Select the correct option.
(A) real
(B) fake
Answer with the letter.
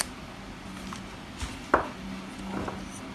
A